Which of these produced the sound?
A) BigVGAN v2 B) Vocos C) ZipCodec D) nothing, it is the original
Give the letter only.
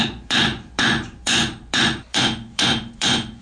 B